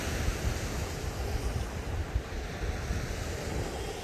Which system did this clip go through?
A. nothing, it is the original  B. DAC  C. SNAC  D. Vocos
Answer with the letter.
A